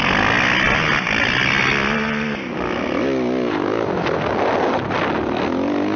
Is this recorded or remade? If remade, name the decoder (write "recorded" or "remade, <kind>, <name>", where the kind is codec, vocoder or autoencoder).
recorded